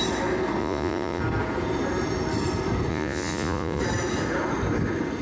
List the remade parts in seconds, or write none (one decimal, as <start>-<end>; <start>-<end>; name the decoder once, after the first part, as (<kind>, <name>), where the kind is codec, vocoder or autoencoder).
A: 0.6-1.2 (vocoder, Vocos); 2.9-3.8